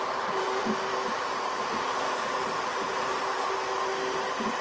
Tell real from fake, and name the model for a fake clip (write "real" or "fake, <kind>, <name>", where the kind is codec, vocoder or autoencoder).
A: fake, vocoder, BigVGAN v2